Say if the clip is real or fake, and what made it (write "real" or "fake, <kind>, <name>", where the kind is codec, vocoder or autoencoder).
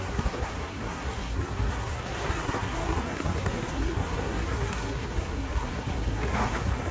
fake, codec, SNAC